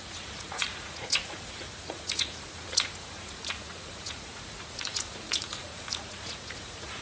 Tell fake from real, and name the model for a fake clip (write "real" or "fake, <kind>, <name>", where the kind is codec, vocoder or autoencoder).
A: fake, vocoder, Vocos